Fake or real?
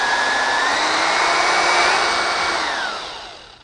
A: real